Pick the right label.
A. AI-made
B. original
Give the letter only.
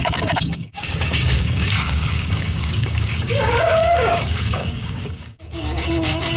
A